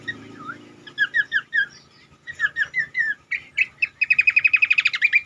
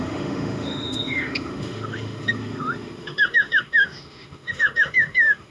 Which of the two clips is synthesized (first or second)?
second